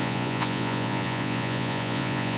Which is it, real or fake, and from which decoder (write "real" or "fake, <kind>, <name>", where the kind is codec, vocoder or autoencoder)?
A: fake, vocoder, Vocos